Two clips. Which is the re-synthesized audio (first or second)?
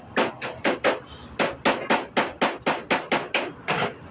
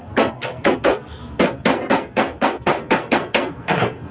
second